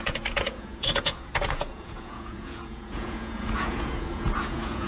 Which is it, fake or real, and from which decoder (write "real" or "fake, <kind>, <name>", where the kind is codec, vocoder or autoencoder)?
fake, vocoder, Vocos